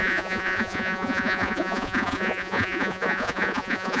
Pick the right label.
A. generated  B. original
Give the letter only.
A